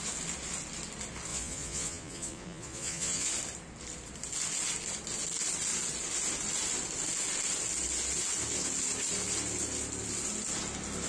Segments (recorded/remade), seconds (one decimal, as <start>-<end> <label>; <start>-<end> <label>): 0.0-1.3 recorded; 1.3-3.3 remade; 3.3-11.1 recorded

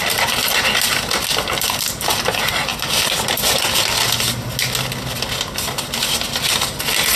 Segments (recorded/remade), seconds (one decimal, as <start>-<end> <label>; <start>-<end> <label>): 0.0-7.2 recorded

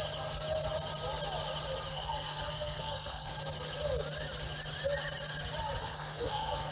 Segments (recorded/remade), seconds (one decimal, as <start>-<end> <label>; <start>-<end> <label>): 0.0-1.9 recorded; 1.9-3.3 remade; 3.3-5.8 recorded; 5.8-6.7 remade

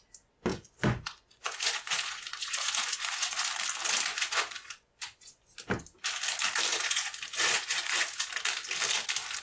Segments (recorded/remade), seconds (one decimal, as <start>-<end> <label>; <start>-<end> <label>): 0.0-0.5 recorded; 0.5-3.4 remade; 3.4-4.1 recorded; 4.1-5.5 remade; 5.5-6.7 recorded; 6.7-8.2 remade; 8.2-9.4 recorded

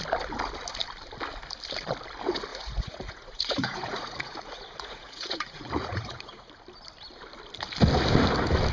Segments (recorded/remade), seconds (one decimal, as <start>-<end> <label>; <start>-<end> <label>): 0.0-2.5 recorded; 2.5-6.5 remade; 6.5-8.7 recorded

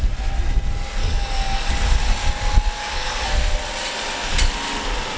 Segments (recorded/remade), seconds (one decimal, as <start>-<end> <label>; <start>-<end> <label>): 0.0-1.0 recorded; 1.0-1.7 remade; 1.7-2.8 recorded; 2.8-3.3 remade; 3.3-5.2 recorded

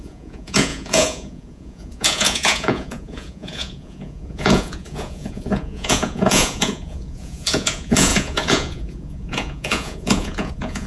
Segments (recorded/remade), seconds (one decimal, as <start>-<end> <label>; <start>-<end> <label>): 0.0-10.9 remade

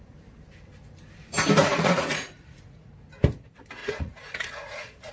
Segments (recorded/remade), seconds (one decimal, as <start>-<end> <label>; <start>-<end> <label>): 0.0-1.7 recorded; 1.7-2.9 remade; 2.9-3.8 recorded; 3.8-5.1 remade